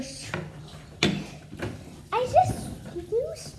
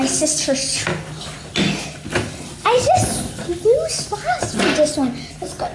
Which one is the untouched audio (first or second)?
second